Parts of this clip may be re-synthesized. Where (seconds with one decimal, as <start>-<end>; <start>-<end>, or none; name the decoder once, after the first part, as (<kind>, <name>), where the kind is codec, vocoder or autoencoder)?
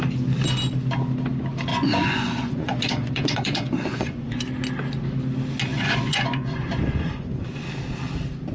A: 1.7-4.4 (vocoder, Vocos); 5.7-7.6